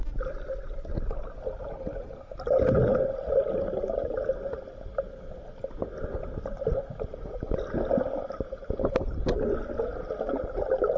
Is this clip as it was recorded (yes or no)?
yes